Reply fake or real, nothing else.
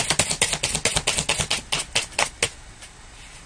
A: real